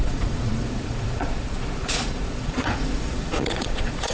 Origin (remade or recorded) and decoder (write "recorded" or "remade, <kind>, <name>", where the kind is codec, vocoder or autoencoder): remade, vocoder, Vocos